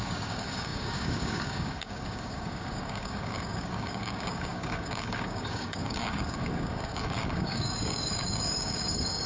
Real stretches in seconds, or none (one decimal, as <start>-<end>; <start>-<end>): none